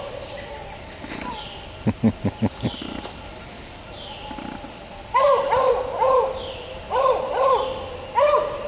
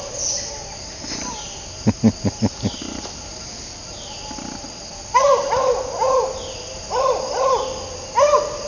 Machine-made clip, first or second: first